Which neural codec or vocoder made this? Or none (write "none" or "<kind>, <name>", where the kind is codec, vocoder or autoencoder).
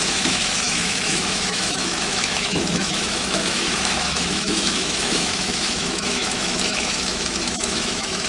autoencoder, DAC-VAE